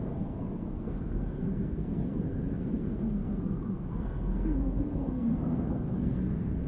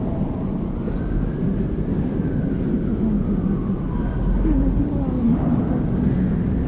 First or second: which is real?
second